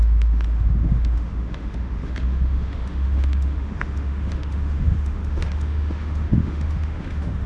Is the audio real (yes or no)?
no